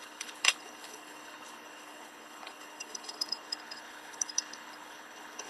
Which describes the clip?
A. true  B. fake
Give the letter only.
B